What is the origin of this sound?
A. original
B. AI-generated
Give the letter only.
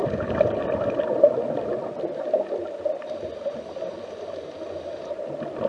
A